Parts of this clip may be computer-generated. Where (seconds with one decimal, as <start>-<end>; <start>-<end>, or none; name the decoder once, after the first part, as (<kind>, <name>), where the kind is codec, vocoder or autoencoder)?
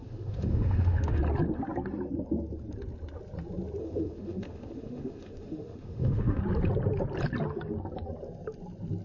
0.0-1.2 (autoencoder, DAC-VAE); 3.8-6.4